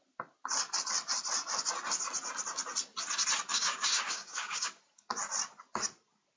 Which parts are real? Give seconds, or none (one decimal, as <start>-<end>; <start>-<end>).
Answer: 0.0-3.5; 4.8-6.4